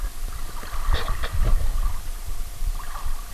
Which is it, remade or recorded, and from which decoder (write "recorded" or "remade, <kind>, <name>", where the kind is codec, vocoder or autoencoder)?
recorded